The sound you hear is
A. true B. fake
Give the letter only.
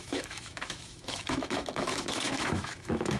B